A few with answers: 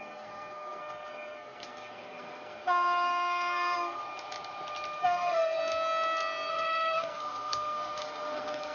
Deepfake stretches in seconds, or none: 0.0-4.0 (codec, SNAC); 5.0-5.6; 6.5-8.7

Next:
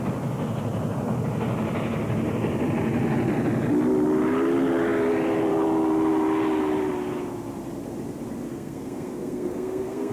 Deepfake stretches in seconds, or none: 8.5-10.1 (codec, SNAC)

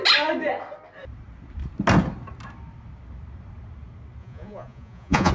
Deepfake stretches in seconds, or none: 4.2-5.3 (vocoder, Vocos)